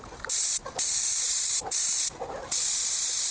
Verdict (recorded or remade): recorded